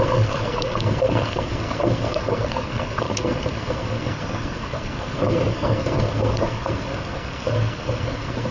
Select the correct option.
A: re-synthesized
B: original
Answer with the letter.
A